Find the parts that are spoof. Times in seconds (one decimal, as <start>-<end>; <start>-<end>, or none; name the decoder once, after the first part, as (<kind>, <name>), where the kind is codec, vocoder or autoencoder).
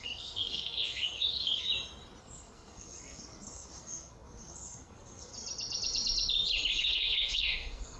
0.0-1.7 (codec, SNAC); 2.2-5.3; 6.7-8.0